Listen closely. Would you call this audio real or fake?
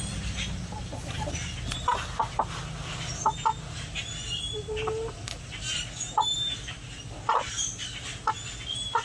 real